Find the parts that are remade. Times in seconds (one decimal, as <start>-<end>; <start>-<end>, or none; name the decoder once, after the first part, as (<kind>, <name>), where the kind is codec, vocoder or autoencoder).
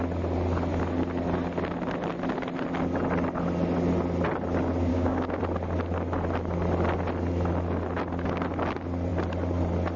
4.9-5.4 (codec, DAC)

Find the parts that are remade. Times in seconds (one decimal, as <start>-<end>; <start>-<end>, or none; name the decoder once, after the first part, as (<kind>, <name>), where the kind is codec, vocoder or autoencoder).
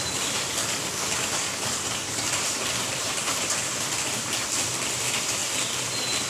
0.6-2.3 (codec, DAC)